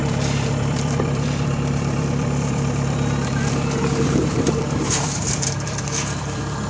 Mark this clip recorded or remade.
remade